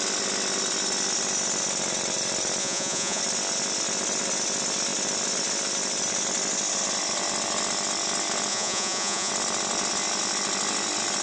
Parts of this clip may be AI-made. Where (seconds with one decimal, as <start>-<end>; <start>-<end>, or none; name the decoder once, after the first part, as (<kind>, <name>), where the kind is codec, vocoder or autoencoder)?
2.6-3.2 (vocoder, Vocos); 8.5-9.3